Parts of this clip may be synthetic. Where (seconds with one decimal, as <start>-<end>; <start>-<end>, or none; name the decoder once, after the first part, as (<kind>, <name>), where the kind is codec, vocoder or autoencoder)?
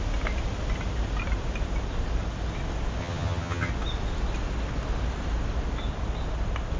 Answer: 3.0-3.7 (vocoder, HiFi-GAN)